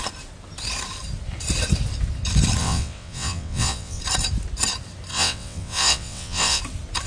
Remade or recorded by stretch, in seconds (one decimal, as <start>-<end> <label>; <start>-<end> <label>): 0.0-2.6 recorded; 2.6-4.0 remade; 4.0-5.1 recorded; 5.1-6.6 remade; 6.6-7.1 recorded